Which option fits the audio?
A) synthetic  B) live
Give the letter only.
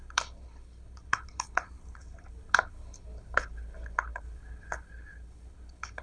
A